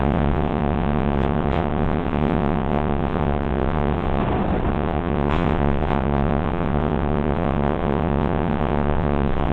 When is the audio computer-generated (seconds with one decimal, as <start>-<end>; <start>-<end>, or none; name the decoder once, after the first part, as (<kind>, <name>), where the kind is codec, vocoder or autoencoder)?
0.0-4.2 (vocoder, WaveNeXt); 4.7-9.5